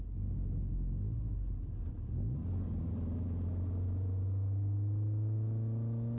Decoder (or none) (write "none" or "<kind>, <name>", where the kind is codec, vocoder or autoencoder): none